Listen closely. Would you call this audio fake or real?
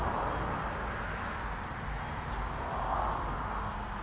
real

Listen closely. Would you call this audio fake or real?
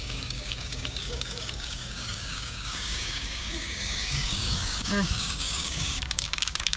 fake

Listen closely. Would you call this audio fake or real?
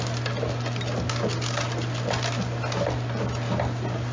real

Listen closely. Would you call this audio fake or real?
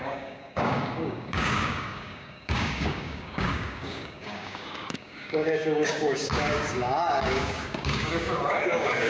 fake